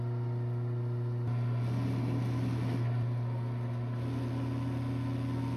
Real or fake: real